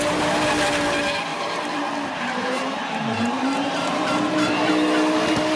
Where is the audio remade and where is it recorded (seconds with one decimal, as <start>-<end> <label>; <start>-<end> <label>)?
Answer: 0.0-1.3 recorded; 1.3-4.7 remade; 4.7-5.6 recorded

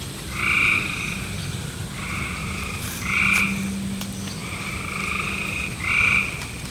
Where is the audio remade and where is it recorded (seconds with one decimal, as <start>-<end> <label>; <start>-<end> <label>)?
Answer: 0.0-2.4 recorded; 2.4-3.2 remade; 3.2-6.7 recorded

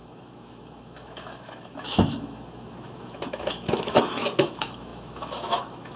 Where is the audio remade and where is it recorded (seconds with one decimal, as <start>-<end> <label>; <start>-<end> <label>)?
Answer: 0.0-6.0 remade

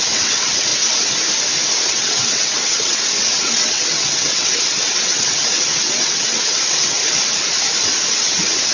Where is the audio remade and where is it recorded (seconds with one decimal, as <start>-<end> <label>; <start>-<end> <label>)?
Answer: 0.0-0.7 remade; 0.7-1.8 recorded; 1.8-7.0 remade; 7.0-8.1 recorded; 8.1-8.7 remade

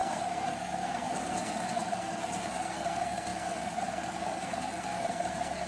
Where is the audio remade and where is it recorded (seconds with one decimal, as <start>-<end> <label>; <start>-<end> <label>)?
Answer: 0.0-5.7 remade

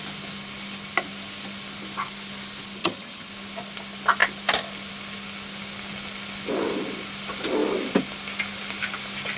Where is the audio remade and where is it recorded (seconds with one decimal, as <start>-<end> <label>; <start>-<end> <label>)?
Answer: 0.0-2.8 recorded; 2.8-3.3 remade; 3.3-9.4 recorded

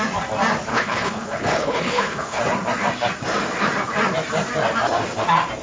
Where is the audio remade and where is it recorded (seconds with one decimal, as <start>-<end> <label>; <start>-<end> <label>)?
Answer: 0.0-0.7 recorded; 0.7-2.4 remade; 2.4-5.6 recorded